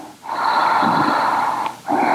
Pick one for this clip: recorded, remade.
recorded